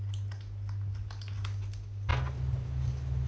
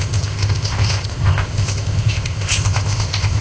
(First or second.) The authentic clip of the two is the first